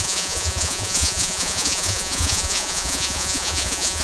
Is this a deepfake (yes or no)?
yes